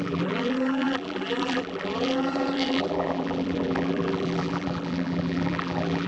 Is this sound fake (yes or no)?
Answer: yes